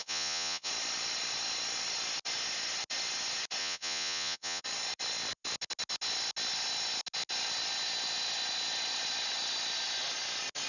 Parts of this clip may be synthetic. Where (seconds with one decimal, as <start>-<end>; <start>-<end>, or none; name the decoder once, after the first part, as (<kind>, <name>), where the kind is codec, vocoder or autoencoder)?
0.0-0.7 (vocoder, Vocos); 3.6-4.6